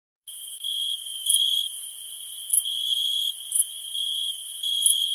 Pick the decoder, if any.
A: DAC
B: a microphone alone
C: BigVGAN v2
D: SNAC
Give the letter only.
C